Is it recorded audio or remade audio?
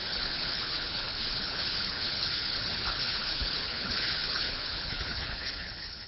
remade